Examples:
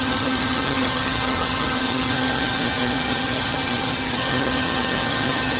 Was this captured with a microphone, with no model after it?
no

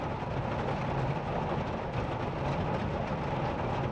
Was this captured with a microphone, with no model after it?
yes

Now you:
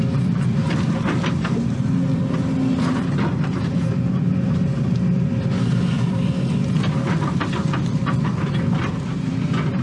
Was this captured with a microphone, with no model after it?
no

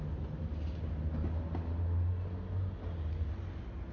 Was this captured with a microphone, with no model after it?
yes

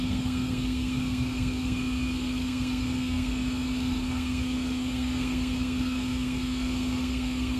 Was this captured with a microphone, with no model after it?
no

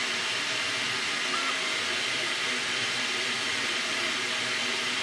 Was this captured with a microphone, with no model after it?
yes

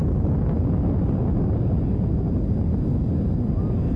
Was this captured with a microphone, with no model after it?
yes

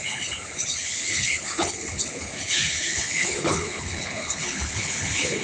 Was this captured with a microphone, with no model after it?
no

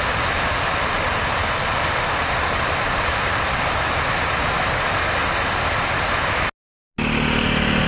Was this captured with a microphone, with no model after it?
yes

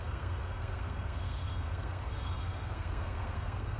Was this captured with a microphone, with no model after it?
no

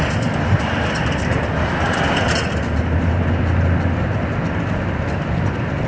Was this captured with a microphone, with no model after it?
yes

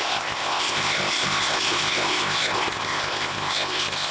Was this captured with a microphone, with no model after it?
no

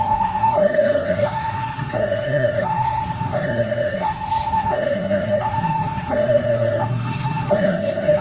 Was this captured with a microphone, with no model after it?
no